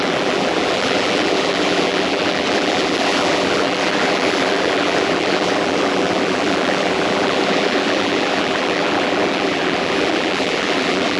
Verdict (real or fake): fake